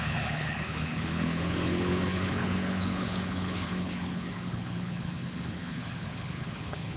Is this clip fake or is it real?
fake